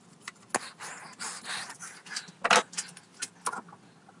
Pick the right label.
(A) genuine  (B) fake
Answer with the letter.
A